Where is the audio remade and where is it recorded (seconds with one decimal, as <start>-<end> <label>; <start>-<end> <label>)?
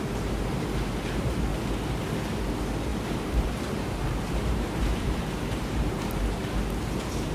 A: 0.0-2.9 recorded; 2.9-6.2 remade; 6.2-7.3 recorded